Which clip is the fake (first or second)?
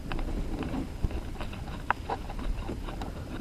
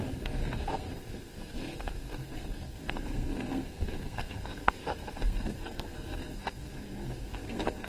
second